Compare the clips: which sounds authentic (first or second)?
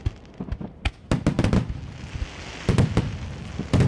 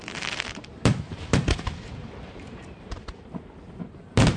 first